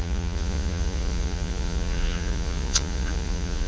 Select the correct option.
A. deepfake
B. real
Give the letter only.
A